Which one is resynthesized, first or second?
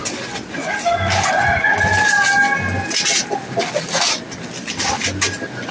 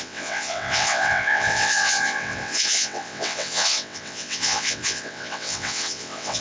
second